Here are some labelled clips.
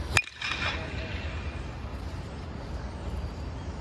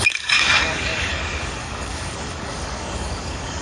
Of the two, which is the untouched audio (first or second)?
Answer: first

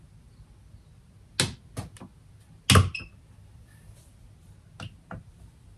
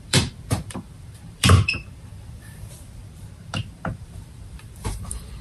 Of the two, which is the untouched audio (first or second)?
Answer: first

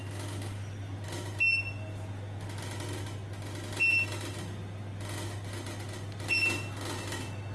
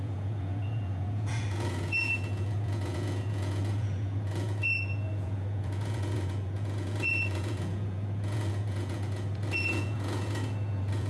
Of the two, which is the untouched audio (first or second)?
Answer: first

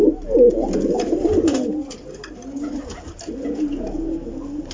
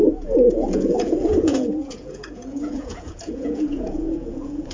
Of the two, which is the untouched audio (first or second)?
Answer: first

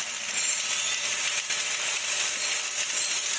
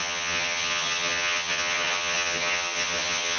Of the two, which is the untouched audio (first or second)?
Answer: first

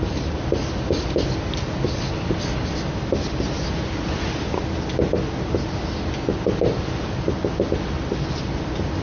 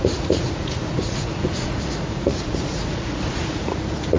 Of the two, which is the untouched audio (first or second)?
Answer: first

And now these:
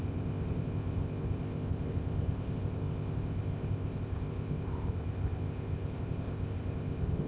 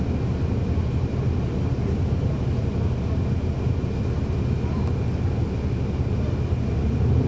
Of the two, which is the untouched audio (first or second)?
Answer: second